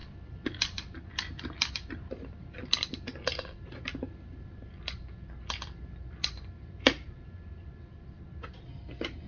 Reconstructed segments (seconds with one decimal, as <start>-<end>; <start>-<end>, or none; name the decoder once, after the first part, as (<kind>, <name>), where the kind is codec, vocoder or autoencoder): 0.0-9.3 (vocoder, BigVGAN v2)